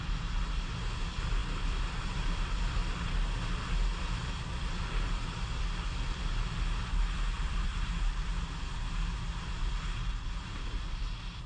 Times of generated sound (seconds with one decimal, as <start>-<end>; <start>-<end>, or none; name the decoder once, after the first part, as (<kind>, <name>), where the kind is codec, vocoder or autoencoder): 0.0-2.8 (vocoder, BigVGAN v2); 4.0-8.3; 9.4-11.5